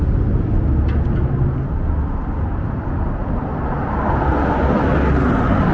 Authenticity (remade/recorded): recorded